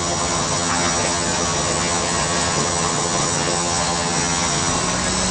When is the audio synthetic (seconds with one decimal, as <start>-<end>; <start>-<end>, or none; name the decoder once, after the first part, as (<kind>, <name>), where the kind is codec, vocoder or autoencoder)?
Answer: 0.0-4.7 (vocoder, HiFi-GAN)